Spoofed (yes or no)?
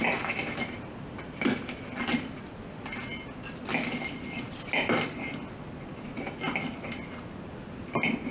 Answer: no